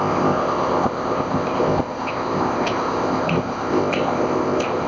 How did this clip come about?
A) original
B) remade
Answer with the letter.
B